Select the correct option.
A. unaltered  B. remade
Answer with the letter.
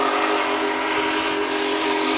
A